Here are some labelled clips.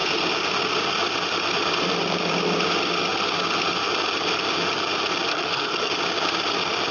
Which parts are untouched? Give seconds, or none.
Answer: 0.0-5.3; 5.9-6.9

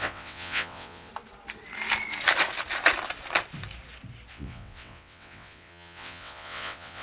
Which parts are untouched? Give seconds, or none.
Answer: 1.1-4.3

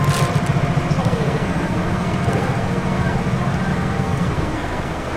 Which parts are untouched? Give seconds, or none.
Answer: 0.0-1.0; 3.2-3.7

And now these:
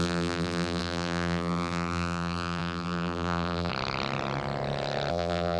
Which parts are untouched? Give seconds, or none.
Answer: 3.7-5.1